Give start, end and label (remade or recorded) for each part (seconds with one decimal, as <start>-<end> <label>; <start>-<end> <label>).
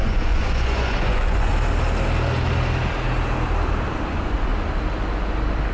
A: 0.0-1.5 remade; 1.5-4.1 recorded; 4.1-4.5 remade; 4.5-5.7 recorded